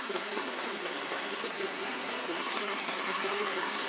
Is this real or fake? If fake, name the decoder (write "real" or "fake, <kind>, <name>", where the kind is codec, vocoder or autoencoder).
fake, codec, SNAC